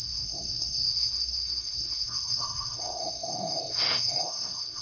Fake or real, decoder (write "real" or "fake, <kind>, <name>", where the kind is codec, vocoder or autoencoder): fake, codec, SNAC